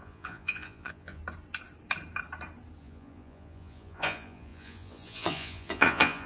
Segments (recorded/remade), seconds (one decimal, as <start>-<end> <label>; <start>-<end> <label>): 0.0-1.2 remade; 1.2-2.8 recorded; 2.8-6.3 remade